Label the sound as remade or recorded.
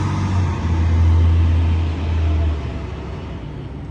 recorded